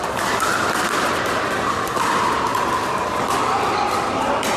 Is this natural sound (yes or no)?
yes